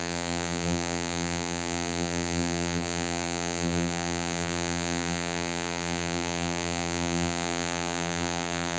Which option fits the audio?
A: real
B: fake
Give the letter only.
B